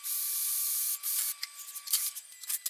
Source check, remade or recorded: recorded